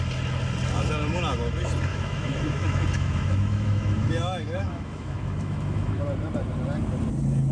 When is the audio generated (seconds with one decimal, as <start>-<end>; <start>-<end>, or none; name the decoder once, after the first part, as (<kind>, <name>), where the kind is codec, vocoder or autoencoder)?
1.9-6.0 (autoencoder, DAC-VAE)